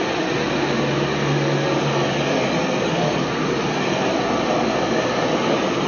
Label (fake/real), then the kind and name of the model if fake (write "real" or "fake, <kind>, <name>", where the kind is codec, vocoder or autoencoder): real